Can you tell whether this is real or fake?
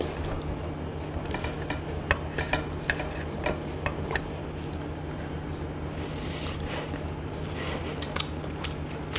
real